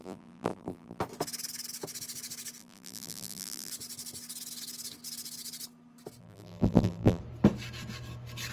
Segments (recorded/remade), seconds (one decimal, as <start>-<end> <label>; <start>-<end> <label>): 0.0-1.0 remade; 1.0-2.6 recorded; 2.6-3.7 remade; 3.7-6.2 recorded; 6.2-7.2 remade; 7.2-8.5 recorded